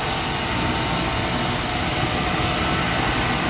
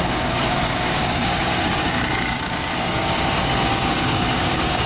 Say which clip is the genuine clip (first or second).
first